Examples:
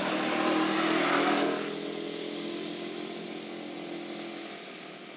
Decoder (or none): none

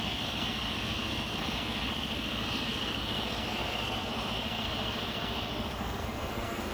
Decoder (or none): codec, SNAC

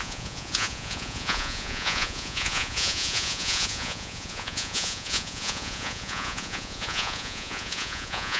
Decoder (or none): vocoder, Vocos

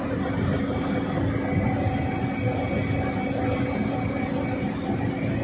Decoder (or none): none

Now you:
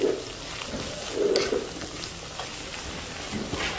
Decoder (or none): none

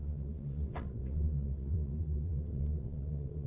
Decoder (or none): vocoder, WaveNeXt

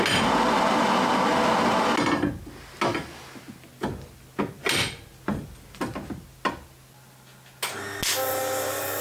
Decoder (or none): none